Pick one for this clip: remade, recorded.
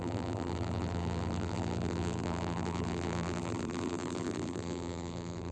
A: remade